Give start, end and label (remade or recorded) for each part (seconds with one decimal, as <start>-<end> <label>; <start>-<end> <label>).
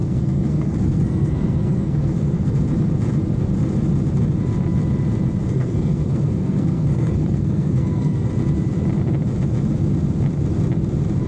0.0-2.6 remade; 2.6-5.5 recorded; 5.5-8.3 remade; 8.3-11.3 recorded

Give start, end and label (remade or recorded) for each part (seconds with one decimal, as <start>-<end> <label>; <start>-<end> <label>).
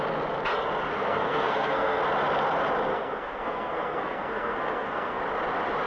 0.0-0.9 recorded; 0.9-2.0 remade; 2.0-2.9 recorded; 2.9-5.2 remade; 5.2-5.9 recorded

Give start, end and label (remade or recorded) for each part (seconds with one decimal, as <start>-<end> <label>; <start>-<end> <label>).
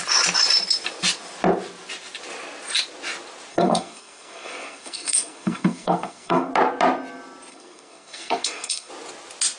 0.0-3.5 recorded; 3.5-6.5 remade; 6.5-7.5 recorded; 7.5-8.9 remade; 8.9-9.6 recorded